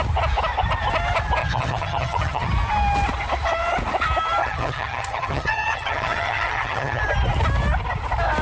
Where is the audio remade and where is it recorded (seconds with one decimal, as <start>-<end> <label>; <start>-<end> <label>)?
0.0-1.4 recorded; 1.4-2.5 remade; 2.5-4.4 recorded; 4.4-7.0 remade; 7.0-8.4 recorded